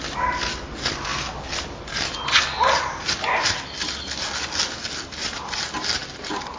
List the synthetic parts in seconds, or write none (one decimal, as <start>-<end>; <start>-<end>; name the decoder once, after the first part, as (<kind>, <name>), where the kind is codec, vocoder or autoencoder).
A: none